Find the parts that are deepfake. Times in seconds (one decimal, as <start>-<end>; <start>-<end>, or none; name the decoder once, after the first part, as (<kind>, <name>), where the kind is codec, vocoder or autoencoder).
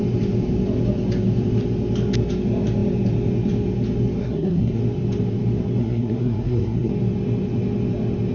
4.2-4.8 (codec, SNAC); 5.8-6.9